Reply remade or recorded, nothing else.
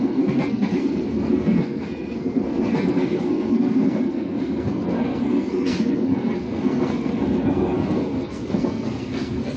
remade